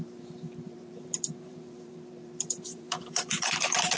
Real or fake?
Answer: fake